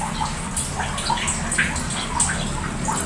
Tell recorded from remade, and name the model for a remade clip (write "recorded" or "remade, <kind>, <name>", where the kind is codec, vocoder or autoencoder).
recorded